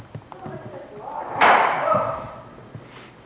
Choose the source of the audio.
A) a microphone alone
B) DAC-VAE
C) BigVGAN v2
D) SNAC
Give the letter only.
A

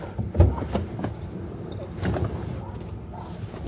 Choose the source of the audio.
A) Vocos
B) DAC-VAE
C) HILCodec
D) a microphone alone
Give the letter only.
D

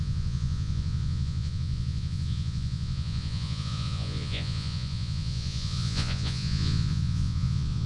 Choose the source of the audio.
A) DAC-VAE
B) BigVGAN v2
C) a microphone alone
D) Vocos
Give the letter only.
D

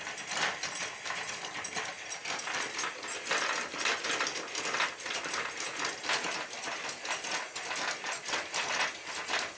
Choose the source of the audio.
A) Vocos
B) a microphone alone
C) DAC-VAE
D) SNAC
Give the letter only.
B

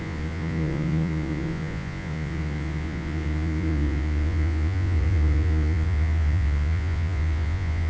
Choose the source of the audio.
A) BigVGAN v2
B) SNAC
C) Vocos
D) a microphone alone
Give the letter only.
C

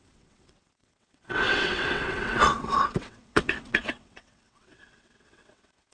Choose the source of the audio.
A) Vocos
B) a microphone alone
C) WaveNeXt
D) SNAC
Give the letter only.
C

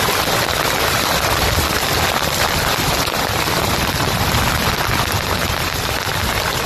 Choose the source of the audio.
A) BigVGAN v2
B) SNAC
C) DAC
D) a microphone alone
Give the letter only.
D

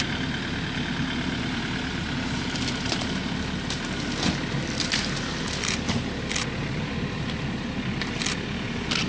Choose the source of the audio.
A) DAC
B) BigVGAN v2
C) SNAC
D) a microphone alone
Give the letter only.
D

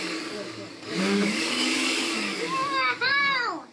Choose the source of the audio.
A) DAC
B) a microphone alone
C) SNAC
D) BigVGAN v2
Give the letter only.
A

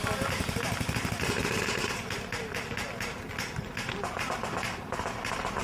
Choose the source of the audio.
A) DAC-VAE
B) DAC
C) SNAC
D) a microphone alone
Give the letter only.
D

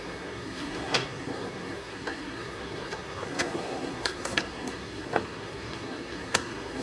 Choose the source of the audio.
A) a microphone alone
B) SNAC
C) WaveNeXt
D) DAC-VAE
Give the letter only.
B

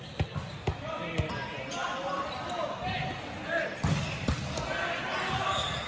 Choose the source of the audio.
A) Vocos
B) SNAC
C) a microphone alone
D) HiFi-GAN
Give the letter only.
C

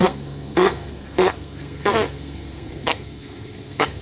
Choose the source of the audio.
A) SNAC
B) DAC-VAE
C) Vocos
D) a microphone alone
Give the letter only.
A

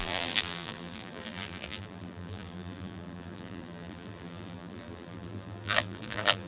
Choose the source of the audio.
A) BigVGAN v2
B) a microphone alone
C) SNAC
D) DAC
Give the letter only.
A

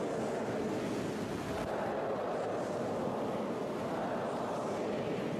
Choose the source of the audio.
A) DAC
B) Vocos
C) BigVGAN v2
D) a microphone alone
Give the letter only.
D